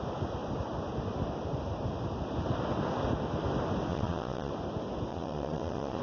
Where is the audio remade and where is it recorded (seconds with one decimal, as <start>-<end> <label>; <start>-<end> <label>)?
0.0-3.9 recorded; 3.9-4.5 remade; 4.5-5.1 recorded; 5.1-6.0 remade